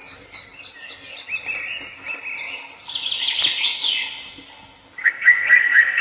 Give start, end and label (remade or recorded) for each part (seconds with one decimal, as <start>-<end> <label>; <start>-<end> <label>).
0.0-5.0 recorded; 5.0-6.0 remade